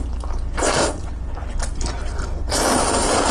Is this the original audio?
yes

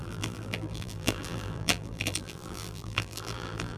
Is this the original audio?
no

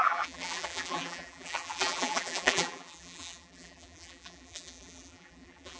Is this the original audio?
no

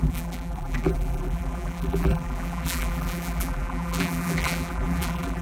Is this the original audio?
no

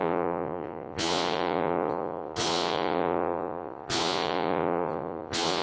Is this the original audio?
no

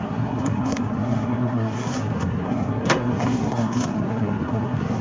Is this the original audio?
no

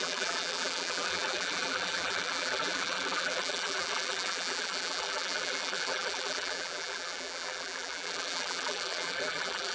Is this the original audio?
no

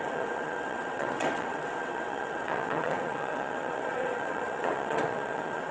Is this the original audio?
no